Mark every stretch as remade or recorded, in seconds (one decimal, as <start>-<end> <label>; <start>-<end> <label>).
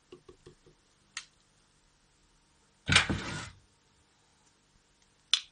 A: 0.0-5.5 recorded